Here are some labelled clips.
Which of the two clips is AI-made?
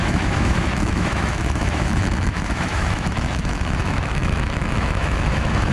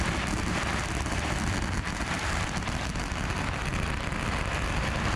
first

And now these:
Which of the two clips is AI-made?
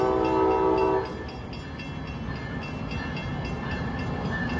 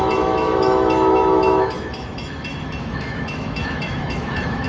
second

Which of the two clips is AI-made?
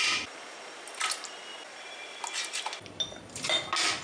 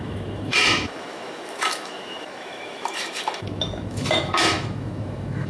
second